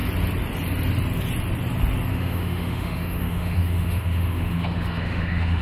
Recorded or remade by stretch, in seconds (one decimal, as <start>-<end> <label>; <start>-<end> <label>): 0.0-2.1 recorded; 2.1-5.6 remade

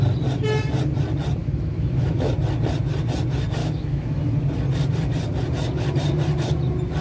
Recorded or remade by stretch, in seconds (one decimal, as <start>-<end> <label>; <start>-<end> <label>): 0.0-1.4 recorded; 1.4-2.3 remade; 2.3-3.6 recorded; 3.6-4.2 remade; 4.2-7.0 recorded

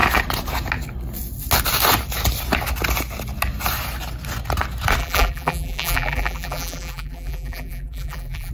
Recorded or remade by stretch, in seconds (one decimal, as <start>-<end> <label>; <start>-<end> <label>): 0.0-5.0 recorded; 5.0-8.5 remade

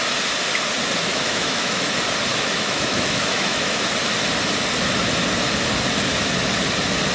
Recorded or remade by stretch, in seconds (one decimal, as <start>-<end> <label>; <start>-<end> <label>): 0.0-1.1 recorded; 1.1-1.9 remade; 1.9-2.3 recorded; 2.3-3.9 remade; 3.9-7.1 recorded

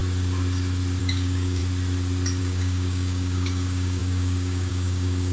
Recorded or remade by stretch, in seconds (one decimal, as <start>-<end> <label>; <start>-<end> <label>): 0.0-1.0 recorded; 1.0-1.6 remade; 1.6-2.4 recorded; 2.4-5.3 remade

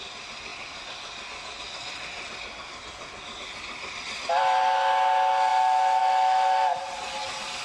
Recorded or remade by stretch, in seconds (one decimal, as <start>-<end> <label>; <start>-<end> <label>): 0.0-7.6 recorded

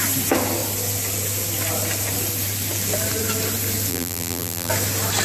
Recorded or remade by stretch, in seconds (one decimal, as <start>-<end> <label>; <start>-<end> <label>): 0.0-3.9 recorded; 3.9-4.7 remade; 4.7-5.2 recorded

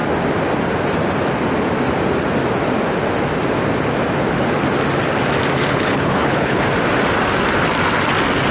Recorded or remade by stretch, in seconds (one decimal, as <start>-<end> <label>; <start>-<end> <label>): 0.0-5.7 recorded; 5.7-6.6 remade; 6.6-8.5 recorded